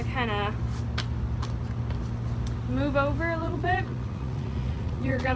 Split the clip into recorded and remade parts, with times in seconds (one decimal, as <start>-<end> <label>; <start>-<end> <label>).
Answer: 0.0-3.4 recorded; 3.4-5.4 remade